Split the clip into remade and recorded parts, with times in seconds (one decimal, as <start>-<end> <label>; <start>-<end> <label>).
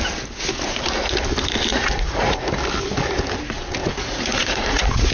0.0-1.7 recorded; 1.7-2.5 remade; 2.5-3.8 recorded; 3.8-5.1 remade